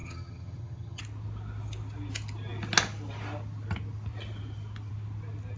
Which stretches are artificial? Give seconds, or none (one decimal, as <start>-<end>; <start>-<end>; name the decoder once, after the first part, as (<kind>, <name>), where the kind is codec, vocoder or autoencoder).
0.0-1.0 (vocoder, HiFi-GAN)